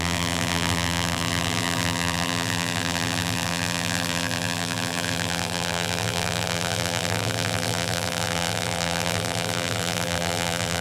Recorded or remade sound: remade